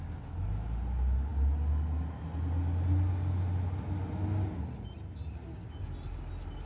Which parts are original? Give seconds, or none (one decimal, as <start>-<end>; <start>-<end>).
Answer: 0.0-6.7